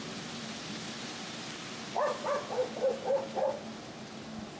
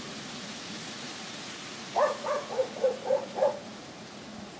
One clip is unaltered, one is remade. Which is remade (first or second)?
second